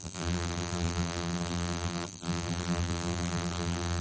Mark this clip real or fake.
fake